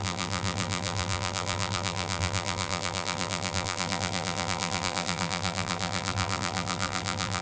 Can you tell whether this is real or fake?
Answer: fake